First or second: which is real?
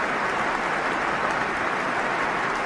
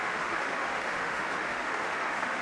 first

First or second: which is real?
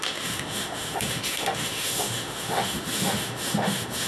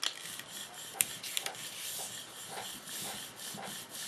second